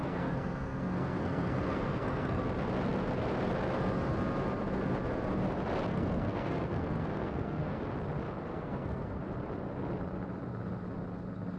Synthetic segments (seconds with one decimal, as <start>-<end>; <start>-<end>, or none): 0.0-2.4; 5.9-7.8; 8.5-9.2